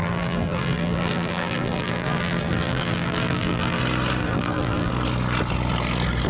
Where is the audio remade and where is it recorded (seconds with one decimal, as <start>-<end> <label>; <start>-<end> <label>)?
0.0-3.8 remade; 3.8-4.2 recorded; 4.2-4.9 remade; 4.9-6.3 recorded